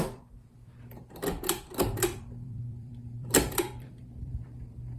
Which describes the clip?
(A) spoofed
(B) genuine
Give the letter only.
A